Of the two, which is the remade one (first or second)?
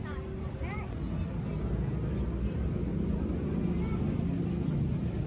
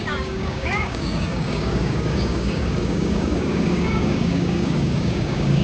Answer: second